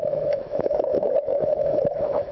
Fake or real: fake